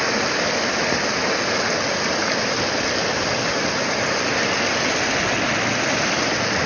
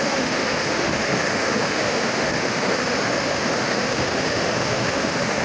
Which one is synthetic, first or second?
second